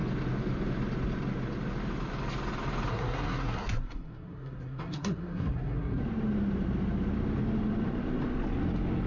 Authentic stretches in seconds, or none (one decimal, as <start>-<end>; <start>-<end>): 0.0-2.9; 6.0-9.1